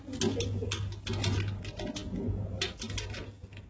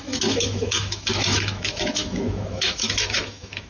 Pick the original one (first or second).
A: first